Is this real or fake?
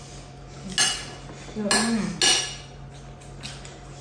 real